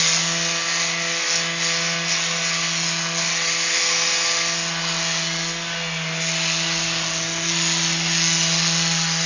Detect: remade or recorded recorded